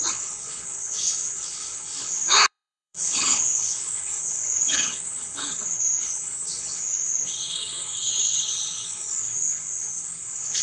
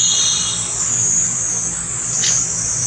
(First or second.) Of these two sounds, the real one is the second